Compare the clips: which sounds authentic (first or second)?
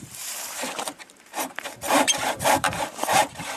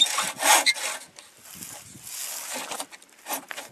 second